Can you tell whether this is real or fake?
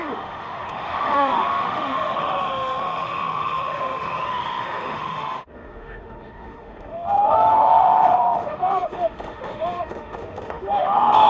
fake